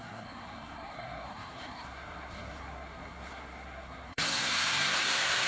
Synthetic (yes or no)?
yes